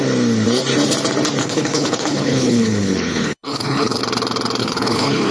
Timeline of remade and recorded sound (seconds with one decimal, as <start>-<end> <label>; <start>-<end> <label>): 0.0-1.4 recorded; 1.4-4.0 remade; 4.0-4.6 recorded; 4.6-5.3 remade